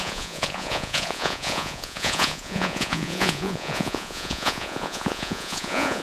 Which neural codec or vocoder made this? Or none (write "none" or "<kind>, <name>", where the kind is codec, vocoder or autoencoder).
vocoder, Vocos